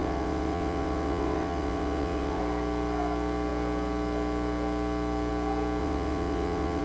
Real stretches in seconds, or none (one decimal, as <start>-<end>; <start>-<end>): 2.4-5.8